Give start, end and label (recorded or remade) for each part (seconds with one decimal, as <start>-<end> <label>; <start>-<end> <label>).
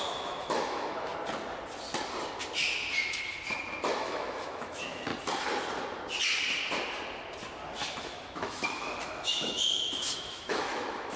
0.0-1.1 remade; 1.1-4.0 recorded; 4.0-5.1 remade; 5.1-8.0 recorded; 8.0-11.2 remade